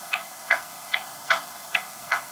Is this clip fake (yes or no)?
yes